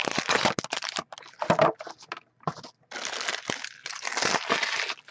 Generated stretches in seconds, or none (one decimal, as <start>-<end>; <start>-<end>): none